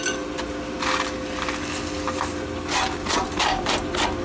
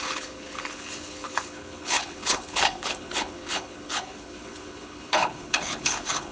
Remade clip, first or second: second